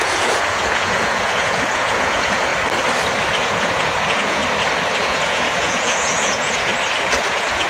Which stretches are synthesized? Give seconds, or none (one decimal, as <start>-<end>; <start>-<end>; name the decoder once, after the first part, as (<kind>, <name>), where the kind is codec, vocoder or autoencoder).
0.0-2.5 (vocoder, Vocos); 3.4-4.4; 5.0-6.7; 7.3-7.7